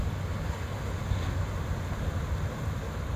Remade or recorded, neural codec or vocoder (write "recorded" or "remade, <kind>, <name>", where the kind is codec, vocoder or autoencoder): recorded